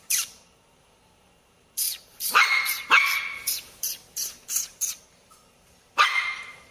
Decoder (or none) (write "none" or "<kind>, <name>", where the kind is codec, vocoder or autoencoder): vocoder, BigVGAN v2